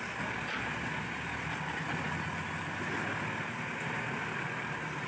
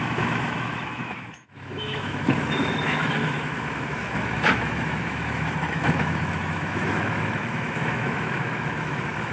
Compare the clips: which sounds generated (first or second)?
second